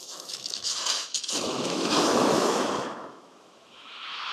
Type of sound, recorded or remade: remade